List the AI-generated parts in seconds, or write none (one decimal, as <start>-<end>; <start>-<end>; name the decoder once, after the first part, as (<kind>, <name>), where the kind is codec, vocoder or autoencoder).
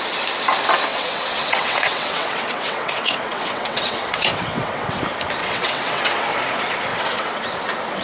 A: 0.9-5.0 (vocoder, WaveNeXt); 5.4-6.4; 6.9-7.4